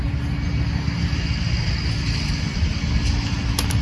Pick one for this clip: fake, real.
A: real